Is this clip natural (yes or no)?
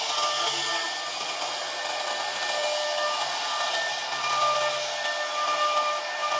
yes